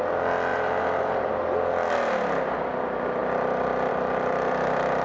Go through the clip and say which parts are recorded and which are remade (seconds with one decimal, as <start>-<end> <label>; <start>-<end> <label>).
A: 0.0-0.5 recorded; 0.5-1.3 remade; 1.3-5.0 recorded